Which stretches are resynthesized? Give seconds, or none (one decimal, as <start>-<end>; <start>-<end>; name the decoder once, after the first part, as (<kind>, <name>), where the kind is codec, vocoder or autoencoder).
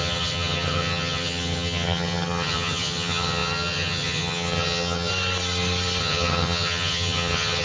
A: 0.0-5.1 (vocoder, HiFi-GAN); 6.0-7.6